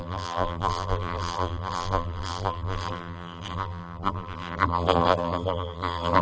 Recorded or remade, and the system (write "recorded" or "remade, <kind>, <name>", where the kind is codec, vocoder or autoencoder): remade, vocoder, BigVGAN v2